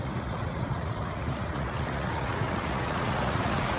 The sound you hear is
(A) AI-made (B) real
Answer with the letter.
A